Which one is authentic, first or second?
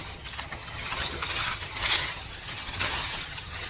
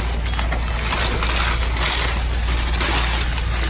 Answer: second